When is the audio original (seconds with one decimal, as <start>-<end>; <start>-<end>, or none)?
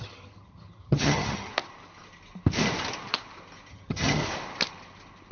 1.5-3.7; 4.2-5.3